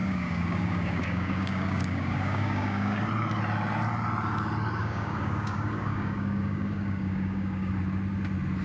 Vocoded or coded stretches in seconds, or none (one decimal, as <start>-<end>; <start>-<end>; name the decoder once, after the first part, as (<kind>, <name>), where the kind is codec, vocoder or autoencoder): 0.0-3.1 (codec, DAC); 4.8-7.7